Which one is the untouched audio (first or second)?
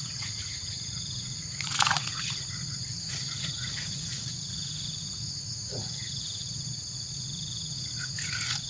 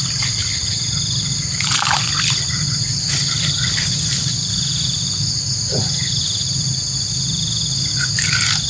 second